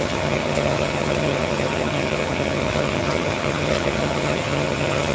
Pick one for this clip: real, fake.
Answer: fake